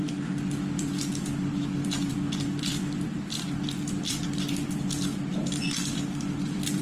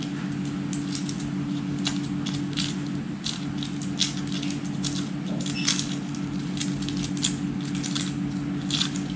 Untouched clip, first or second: second